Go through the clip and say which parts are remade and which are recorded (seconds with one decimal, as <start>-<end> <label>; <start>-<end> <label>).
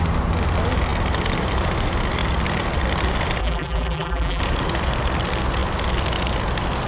0.0-3.4 recorded; 3.4-4.4 remade; 4.4-6.9 recorded